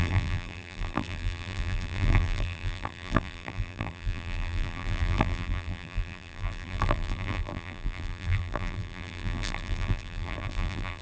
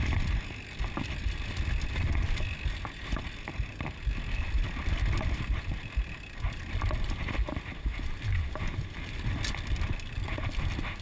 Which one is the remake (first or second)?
first